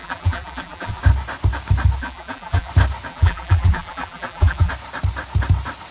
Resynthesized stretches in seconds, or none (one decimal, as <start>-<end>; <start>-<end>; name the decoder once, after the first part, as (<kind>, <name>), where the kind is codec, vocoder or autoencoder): 0.0-1.0 (vocoder, BigVGAN v2); 2.0-2.7; 3.1-4.7

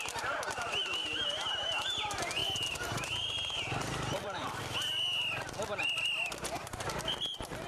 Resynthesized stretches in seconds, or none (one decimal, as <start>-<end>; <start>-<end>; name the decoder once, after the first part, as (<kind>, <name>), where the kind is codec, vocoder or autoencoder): 1.0-2.0 (vocoder, BigVGAN v2); 2.4-4.6